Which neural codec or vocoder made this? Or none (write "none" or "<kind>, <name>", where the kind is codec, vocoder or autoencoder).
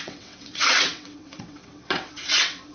vocoder, WaveNeXt